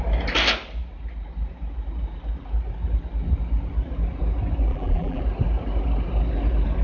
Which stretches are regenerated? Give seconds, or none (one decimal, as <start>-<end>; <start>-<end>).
4.7-5.2